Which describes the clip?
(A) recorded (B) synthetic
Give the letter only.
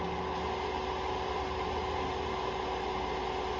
A